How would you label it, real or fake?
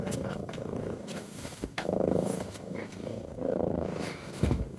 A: fake